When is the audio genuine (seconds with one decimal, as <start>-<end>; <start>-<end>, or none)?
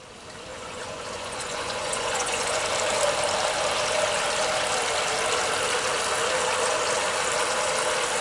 0.0-0.5; 2.6-8.2